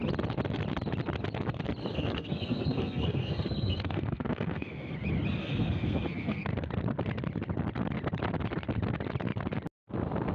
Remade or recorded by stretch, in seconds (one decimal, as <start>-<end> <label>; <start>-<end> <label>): 0.0-1.9 recorded; 1.9-4.9 remade; 4.9-5.4 recorded; 5.4-6.7 remade; 6.7-10.3 recorded

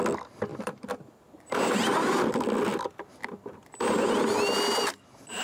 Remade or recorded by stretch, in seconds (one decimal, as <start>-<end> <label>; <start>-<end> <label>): 0.0-0.5 recorded; 0.5-1.2 remade; 1.2-5.4 recorded

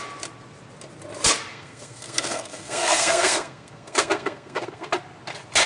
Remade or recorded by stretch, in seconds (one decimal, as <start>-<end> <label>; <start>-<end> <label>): 0.0-1.5 recorded; 1.5-4.9 remade; 4.9-5.7 recorded

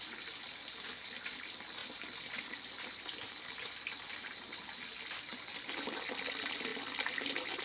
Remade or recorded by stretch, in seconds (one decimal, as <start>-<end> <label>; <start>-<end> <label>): 0.0-7.6 recorded

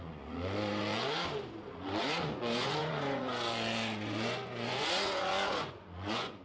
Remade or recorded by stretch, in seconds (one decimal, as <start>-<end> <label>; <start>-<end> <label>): 0.0-0.8 remade; 0.8-2.0 recorded; 2.0-6.4 remade

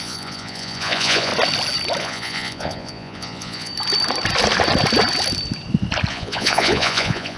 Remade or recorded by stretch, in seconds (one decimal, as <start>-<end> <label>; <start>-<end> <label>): 0.0-1.3 remade; 1.3-2.0 recorded; 2.0-3.7 remade; 3.7-6.1 recorded; 6.1-7.4 remade

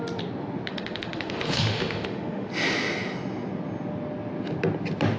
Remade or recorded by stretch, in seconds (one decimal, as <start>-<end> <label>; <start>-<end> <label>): 0.0-0.7 recorded; 0.7-2.5 remade; 2.5-5.2 recorded